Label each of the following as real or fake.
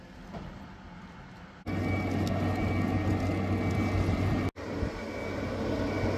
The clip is real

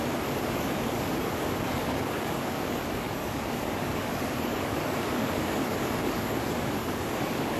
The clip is fake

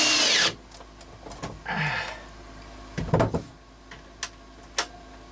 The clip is real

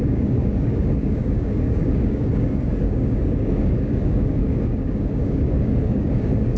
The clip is fake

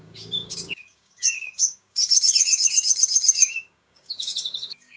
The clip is fake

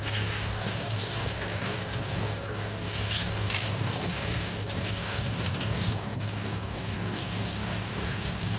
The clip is fake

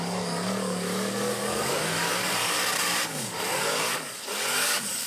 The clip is fake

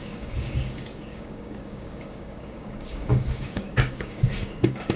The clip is fake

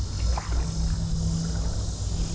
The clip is real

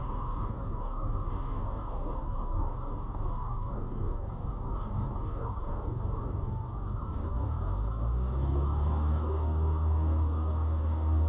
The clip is fake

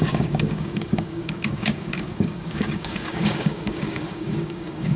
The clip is fake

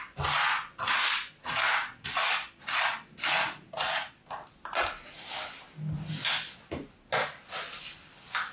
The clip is real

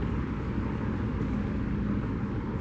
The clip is fake